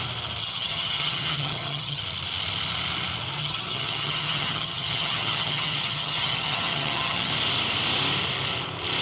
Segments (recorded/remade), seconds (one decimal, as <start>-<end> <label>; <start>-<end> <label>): 0.0-0.4 recorded; 0.4-2.0 remade; 2.0-3.4 recorded; 3.4-7.3 remade; 7.3-9.0 recorded